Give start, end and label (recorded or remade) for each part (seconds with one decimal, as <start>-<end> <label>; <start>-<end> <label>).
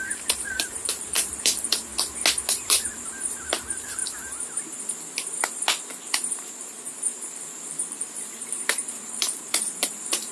0.0-1.9 remade; 1.9-2.5 recorded; 2.5-4.0 remade; 4.0-6.3 recorded; 6.3-10.3 remade